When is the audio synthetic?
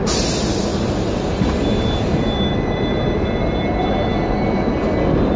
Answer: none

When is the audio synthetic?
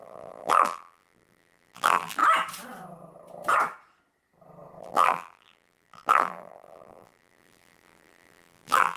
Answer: 0.0-2.2 (vocoder, BigVGAN v2); 4.8-9.0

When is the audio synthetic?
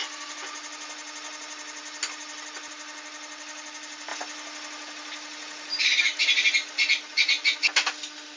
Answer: none